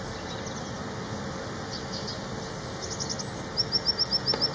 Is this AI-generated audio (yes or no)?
no